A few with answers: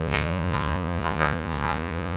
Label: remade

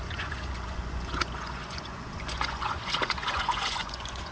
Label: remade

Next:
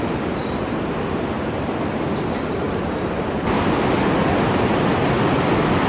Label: recorded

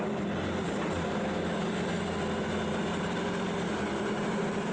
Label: recorded